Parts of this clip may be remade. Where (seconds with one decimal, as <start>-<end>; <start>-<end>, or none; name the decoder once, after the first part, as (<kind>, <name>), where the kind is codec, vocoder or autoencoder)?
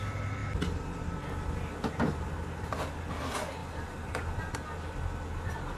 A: none